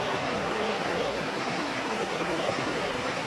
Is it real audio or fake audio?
fake